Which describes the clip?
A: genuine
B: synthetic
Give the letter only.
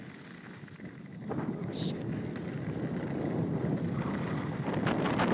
A